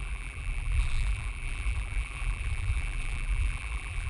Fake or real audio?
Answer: fake